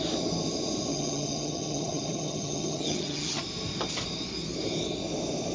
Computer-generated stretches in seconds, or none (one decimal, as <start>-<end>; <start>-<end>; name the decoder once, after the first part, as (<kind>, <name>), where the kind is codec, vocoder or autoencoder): 0.9-3.4 (vocoder, HiFi-GAN)